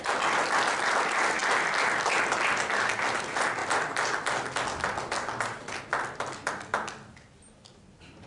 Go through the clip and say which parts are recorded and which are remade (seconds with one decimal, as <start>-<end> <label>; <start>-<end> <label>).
0.0-8.3 recorded